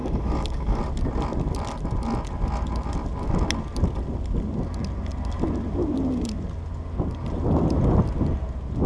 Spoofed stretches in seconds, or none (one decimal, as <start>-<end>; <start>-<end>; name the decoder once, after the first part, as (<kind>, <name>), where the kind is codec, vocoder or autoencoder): 0.0-0.8 (codec, DAC)